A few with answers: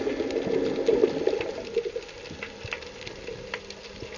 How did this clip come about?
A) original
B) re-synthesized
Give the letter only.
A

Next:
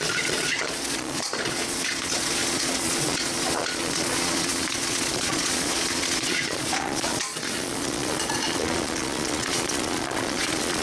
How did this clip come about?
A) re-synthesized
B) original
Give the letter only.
A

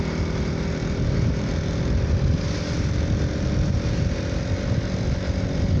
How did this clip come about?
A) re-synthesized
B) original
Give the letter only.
B